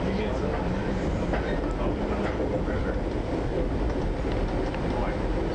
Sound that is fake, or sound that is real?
real